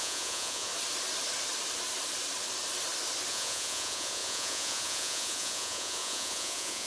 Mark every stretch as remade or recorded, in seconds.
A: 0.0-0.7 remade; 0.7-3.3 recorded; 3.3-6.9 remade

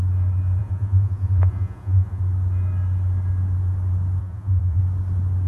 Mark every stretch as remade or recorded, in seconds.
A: 0.0-0.6 recorded; 0.6-2.2 remade; 2.2-4.2 recorded; 4.2-4.8 remade; 4.8-5.5 recorded

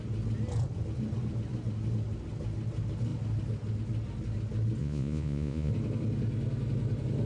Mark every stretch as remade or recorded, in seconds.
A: 0.0-4.8 recorded; 4.8-5.7 remade; 5.7-7.3 recorded

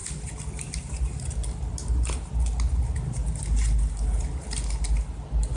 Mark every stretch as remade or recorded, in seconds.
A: 0.0-5.6 recorded